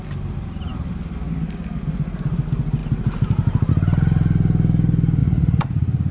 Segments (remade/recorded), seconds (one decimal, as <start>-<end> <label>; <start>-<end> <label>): 0.0-5.2 recorded; 5.2-6.1 remade